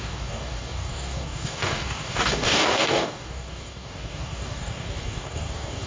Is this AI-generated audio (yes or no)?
yes